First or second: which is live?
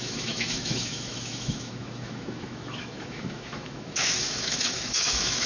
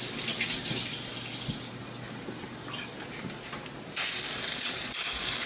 second